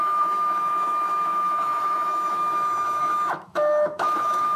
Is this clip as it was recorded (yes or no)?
no